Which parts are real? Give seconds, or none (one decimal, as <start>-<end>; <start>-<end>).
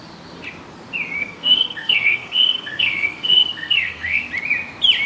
0.0-1.2; 4.3-5.1